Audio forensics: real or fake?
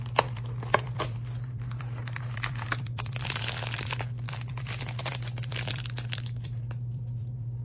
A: fake